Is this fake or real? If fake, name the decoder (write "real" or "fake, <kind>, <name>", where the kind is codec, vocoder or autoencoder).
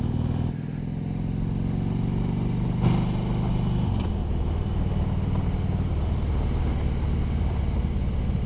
real